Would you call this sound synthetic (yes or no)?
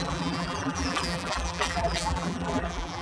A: yes